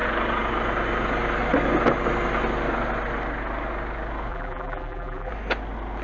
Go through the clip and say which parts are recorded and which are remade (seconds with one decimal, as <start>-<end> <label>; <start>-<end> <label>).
0.0-4.3 recorded; 4.3-5.3 remade; 5.3-6.0 recorded